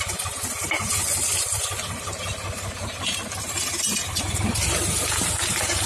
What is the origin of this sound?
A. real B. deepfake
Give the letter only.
A